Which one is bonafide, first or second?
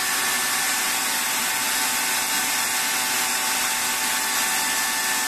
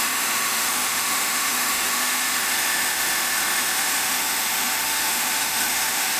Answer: first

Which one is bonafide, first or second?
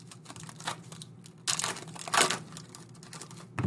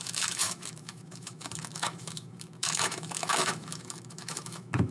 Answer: first